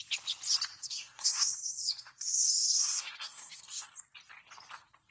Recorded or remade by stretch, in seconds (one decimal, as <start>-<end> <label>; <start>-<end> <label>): 0.0-0.8 recorded; 0.8-3.9 remade; 3.9-5.1 recorded